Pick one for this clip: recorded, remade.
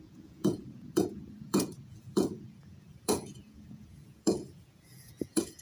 remade